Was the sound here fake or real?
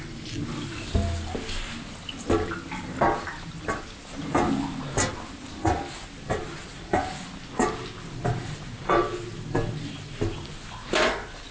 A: real